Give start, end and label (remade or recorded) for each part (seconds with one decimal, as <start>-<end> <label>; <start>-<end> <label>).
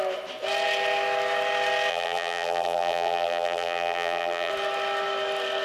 0.0-1.9 recorded; 1.9-4.5 remade; 4.5-5.6 recorded